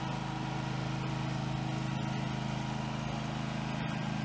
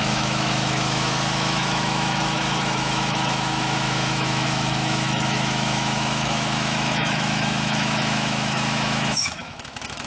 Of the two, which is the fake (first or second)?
second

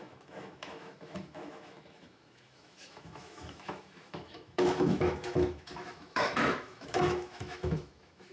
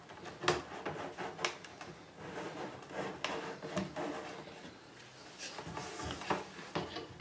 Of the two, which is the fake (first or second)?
first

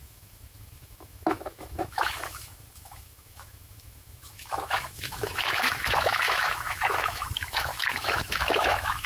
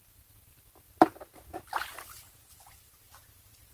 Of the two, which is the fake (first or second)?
first